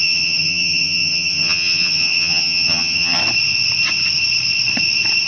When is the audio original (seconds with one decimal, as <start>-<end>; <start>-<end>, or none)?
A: 3.2-5.3